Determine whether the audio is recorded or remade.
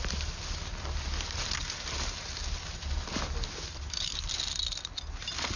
recorded